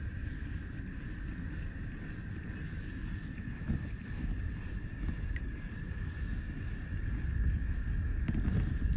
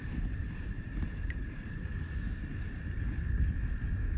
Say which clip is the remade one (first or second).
second